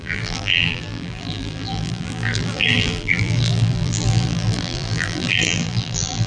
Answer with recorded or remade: remade